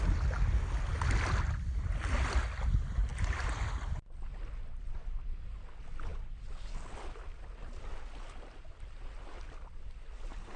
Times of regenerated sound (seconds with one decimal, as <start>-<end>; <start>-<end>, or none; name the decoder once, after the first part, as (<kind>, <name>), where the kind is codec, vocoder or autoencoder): none